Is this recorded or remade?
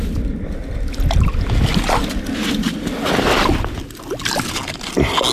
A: recorded